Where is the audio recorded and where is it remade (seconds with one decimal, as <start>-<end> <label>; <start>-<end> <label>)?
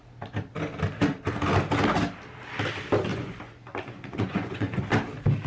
0.0-3.1 recorded; 3.1-4.8 remade; 4.8-5.5 recorded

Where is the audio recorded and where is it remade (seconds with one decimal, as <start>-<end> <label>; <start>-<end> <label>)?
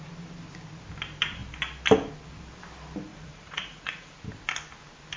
0.0-3.1 recorded; 3.1-4.2 remade; 4.2-5.2 recorded